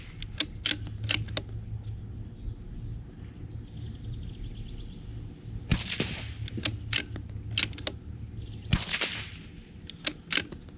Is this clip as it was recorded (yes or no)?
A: yes